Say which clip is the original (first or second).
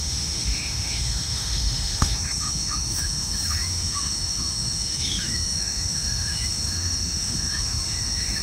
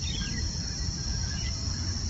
second